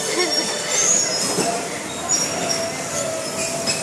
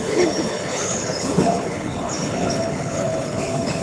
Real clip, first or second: first